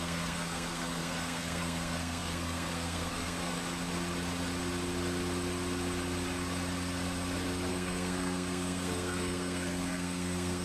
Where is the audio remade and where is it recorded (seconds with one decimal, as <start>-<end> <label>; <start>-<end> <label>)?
0.0-3.5 remade; 3.5-7.7 recorded; 7.7-10.6 remade